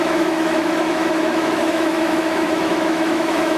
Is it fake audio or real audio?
fake